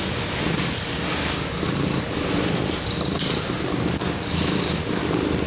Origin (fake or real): real